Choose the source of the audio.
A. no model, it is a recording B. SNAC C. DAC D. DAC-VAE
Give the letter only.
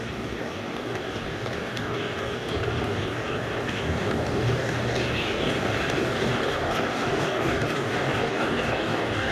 C